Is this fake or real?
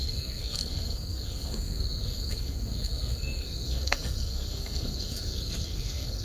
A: fake